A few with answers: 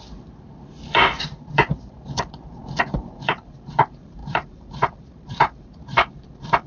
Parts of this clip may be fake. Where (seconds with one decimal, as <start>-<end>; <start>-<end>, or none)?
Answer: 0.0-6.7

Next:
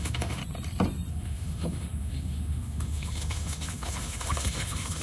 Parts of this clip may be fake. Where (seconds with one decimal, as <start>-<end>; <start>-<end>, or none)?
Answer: 0.0-0.4; 1.1-5.0

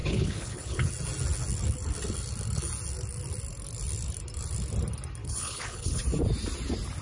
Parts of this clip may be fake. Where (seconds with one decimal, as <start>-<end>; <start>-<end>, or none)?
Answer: 0.0-0.9; 5.2-6.0

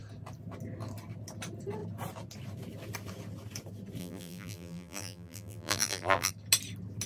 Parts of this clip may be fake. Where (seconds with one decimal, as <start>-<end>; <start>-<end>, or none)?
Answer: 4.0-6.3

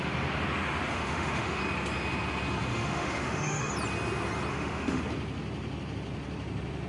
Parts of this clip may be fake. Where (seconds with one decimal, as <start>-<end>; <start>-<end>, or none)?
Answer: 0.9-1.6; 2.7-3.7; 4.5-5.0